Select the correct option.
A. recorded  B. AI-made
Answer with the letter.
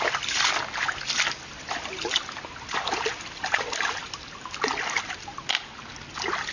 A